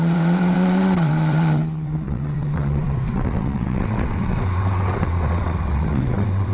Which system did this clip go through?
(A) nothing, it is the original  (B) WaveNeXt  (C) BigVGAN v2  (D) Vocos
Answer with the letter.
B